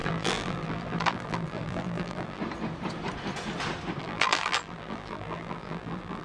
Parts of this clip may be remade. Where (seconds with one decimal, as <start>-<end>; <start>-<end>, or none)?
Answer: 0.0-2.4; 4.0-6.2